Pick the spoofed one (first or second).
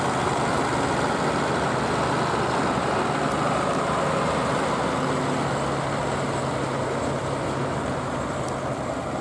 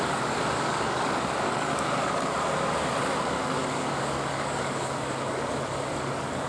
second